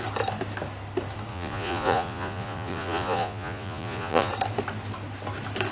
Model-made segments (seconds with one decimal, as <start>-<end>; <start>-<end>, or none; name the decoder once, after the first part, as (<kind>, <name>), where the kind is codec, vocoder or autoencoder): 1.3-4.3 (vocoder, Vocos)